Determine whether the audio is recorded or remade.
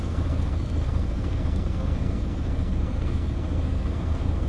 remade